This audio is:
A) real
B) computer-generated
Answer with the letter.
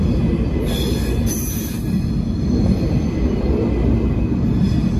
A